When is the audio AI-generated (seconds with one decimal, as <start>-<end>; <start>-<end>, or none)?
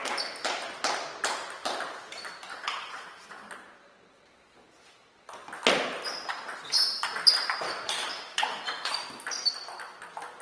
2.5-3.5; 8.1-8.9